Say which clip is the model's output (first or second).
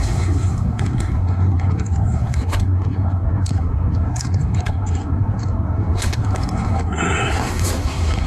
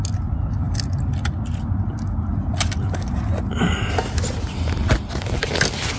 first